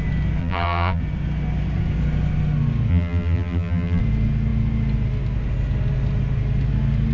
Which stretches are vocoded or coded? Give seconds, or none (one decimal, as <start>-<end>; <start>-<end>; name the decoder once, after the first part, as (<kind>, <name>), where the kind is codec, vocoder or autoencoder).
0.4-1.0 (vocoder, BigVGAN v2); 2.9-4.0